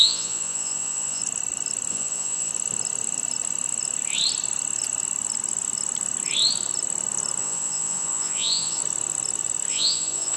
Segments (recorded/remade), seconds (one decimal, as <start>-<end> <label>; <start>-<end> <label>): 0.0-1.2 remade; 1.2-1.9 recorded; 1.9-2.5 remade; 2.5-7.4 recorded; 7.4-8.8 remade; 8.8-9.7 recorded; 9.7-10.4 remade